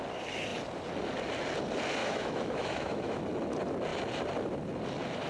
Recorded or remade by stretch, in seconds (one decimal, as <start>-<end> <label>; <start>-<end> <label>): 0.0-2.0 recorded; 2.0-3.2 remade; 3.2-5.3 recorded